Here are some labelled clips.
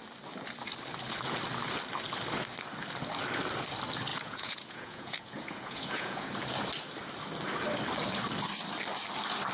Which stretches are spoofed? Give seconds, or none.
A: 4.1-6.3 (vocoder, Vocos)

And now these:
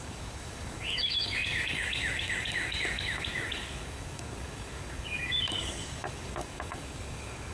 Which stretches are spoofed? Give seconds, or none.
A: 0.0-7.5 (codec, DAC)

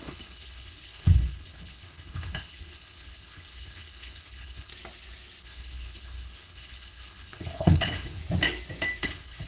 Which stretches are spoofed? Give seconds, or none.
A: 0.0-4.7 (codec, HILCodec); 5.4-8.2; 9.0-9.5

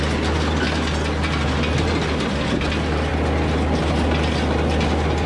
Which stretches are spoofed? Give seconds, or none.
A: none